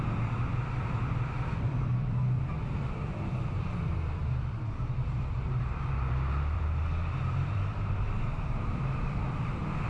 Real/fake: fake